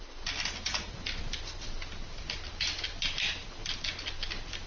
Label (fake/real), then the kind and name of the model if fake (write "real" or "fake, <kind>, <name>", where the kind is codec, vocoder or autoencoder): real